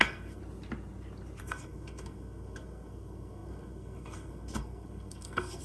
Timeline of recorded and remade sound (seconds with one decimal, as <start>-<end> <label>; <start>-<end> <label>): 0.0-0.4 remade; 0.4-1.4 recorded; 1.4-5.6 remade